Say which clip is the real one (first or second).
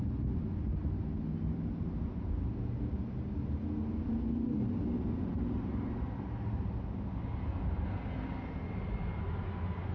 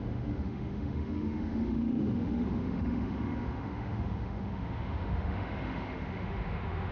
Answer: first